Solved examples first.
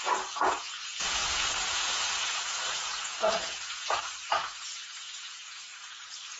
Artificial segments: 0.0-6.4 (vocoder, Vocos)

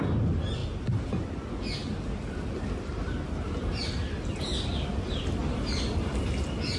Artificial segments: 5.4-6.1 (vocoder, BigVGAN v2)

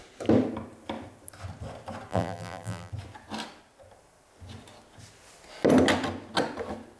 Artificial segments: 2.1-2.9 (vocoder, BigVGAN v2)